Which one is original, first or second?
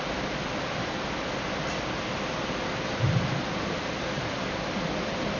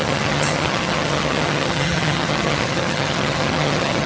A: first